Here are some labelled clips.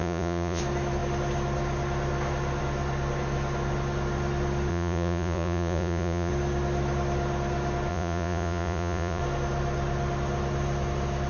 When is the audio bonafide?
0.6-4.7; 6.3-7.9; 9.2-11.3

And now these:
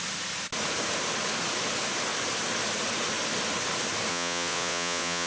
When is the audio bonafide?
0.0-4.1

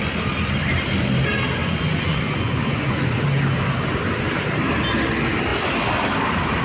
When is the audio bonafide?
0.0-1.6; 3.2-6.6